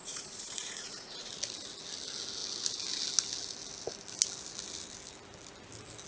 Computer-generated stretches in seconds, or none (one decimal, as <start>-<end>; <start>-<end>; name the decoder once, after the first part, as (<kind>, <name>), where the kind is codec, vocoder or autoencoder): 0.0-1.3 (vocoder, Vocos)